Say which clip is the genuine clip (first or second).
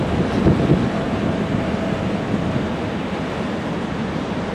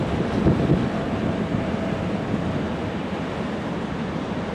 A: first